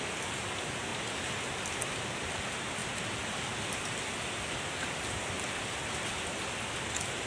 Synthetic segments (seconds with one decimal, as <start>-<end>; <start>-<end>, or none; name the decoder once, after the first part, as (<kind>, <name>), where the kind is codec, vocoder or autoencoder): none